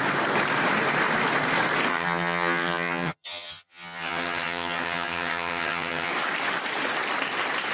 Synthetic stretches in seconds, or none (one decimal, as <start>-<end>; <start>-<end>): 1.9-6.1